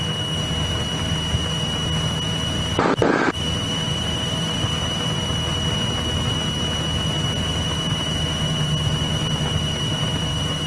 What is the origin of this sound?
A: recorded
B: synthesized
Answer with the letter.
A